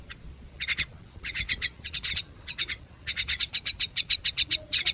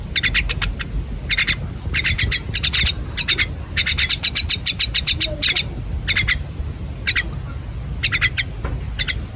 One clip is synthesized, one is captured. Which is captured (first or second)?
second